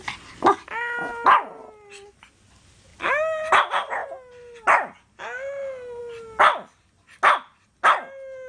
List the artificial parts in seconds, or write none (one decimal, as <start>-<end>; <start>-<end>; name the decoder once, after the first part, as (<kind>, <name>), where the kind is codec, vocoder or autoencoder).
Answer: none